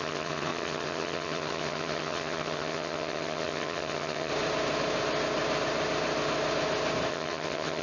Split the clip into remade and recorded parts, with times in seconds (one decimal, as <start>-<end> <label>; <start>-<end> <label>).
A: 0.0-4.3 remade; 4.3-7.1 recorded; 7.1-7.8 remade